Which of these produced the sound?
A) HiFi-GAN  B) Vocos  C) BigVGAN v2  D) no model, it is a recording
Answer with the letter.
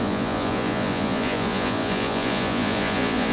B